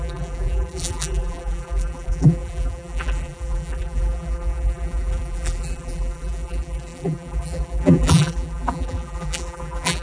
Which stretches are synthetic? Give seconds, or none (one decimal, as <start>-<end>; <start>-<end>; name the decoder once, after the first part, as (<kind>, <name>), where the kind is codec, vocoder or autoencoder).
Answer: 0.0-10.0 (vocoder, BigVGAN v2)